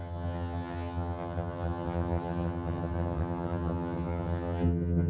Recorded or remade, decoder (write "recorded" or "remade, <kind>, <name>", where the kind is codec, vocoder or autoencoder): remade, vocoder, HiFi-GAN